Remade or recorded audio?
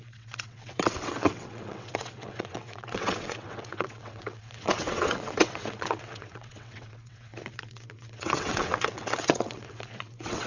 remade